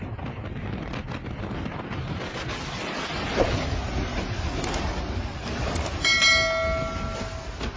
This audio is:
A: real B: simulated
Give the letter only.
A